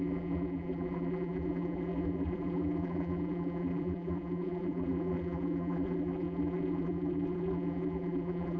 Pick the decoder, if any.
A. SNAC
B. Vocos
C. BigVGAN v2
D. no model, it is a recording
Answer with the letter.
C